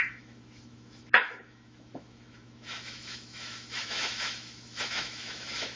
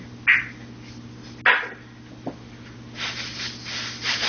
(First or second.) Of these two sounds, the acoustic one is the second